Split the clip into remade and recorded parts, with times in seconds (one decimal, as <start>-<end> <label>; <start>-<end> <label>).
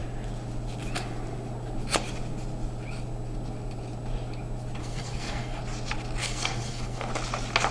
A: 0.0-4.8 recorded; 4.8-5.6 remade; 5.6-6.2 recorded; 6.2-7.1 remade; 7.1-7.7 recorded